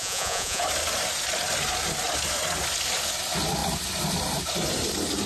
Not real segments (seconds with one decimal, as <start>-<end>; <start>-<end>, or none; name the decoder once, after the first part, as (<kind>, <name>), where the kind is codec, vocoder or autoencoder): 0.0-0.6 (vocoder, Vocos)